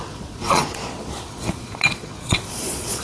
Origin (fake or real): fake